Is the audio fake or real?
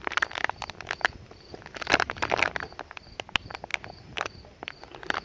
real